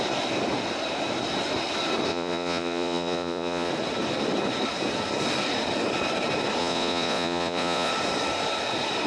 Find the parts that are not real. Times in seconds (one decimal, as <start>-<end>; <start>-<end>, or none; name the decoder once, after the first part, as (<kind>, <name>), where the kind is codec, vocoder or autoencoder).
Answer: 2.1-3.7 (vocoder, Vocos); 6.6-7.9